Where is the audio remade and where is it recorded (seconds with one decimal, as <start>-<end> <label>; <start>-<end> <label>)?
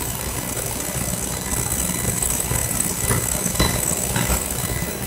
0.0-1.5 remade; 1.5-2.1 recorded; 2.1-5.1 remade